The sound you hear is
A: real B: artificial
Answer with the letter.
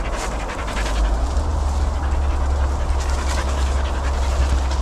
A